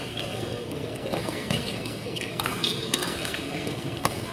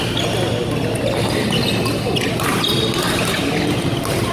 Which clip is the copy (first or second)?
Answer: first